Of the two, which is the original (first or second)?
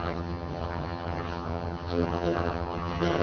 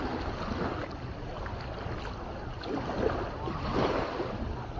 second